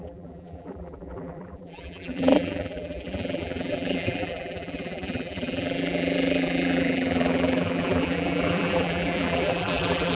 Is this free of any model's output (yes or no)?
no